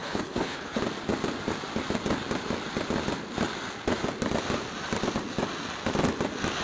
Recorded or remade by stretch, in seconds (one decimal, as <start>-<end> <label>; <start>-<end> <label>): 0.0-0.8 remade; 0.8-6.6 recorded